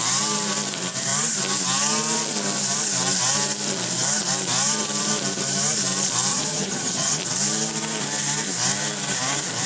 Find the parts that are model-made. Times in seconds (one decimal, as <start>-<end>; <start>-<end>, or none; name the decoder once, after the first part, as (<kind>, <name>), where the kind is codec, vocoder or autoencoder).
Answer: 6.3-7.2 (vocoder, HiFi-GAN)